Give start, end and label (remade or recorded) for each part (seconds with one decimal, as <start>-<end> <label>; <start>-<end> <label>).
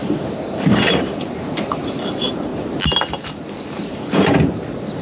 0.0-0.9 recorded; 0.9-2.5 remade; 2.5-5.0 recorded